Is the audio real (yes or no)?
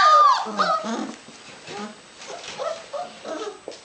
yes